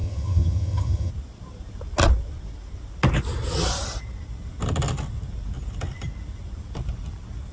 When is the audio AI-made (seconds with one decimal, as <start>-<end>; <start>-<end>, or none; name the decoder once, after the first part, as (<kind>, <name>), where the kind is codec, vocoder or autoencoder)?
0.0-1.1 (vocoder, HiFi-GAN)

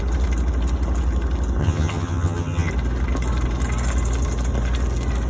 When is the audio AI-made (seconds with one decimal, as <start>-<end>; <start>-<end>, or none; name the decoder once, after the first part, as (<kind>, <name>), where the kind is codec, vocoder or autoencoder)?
1.6-2.7 (vocoder, HiFi-GAN)

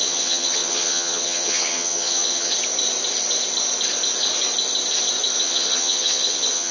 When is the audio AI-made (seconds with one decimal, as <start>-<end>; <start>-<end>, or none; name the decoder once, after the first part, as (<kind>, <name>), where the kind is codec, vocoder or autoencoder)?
0.0-2.5 (vocoder, HiFi-GAN); 5.4-6.7

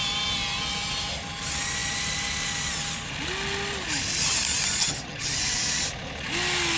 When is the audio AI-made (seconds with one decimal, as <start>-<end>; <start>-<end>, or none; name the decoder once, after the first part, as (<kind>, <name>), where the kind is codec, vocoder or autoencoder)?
4.8-5.4 (vocoder, HiFi-GAN)

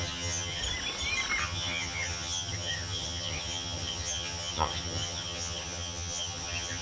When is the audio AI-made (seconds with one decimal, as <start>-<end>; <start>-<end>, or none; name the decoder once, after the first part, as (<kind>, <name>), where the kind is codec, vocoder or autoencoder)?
0.0-0.6 (vocoder, HiFi-GAN); 1.4-6.8

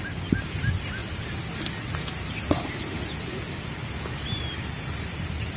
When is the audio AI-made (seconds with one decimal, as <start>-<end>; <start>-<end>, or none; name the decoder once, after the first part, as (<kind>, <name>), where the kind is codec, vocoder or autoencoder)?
none

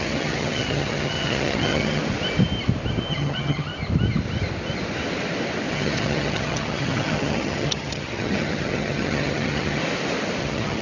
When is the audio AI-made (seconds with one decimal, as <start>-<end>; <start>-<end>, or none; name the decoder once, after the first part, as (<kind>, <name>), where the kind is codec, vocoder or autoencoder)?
0.0-2.0 (vocoder, HiFi-GAN); 3.1-3.7; 5.7-9.8; 10.4-10.8

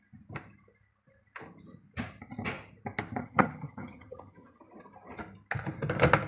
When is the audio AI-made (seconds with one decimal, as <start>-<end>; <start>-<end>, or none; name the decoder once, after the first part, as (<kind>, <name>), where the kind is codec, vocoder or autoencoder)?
3.2-4.6 (vocoder, HiFi-GAN)